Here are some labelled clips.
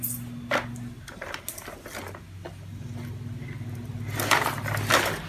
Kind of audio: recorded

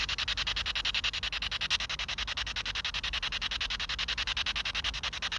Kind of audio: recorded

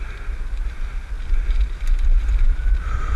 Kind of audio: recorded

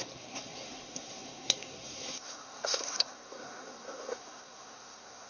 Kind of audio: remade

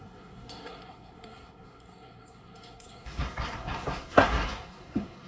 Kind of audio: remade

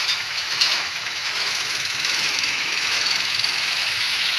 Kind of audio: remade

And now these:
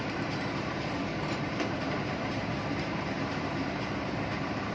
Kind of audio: remade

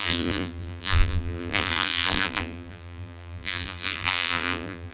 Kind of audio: remade